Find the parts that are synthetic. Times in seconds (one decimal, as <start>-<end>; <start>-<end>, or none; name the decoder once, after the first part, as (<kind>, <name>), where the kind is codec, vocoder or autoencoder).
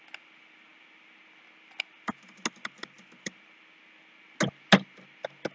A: none